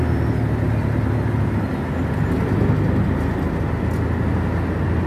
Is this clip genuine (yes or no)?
yes